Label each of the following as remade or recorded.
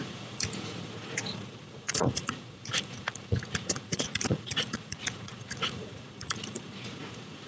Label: remade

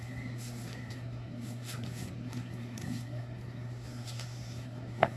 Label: remade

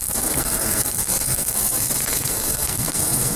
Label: remade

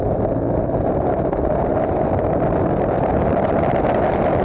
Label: remade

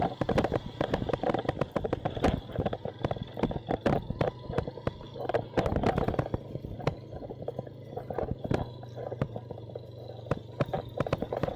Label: recorded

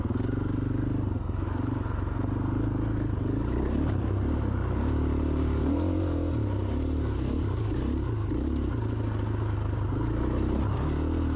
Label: recorded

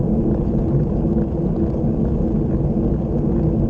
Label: recorded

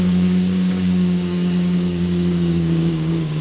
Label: remade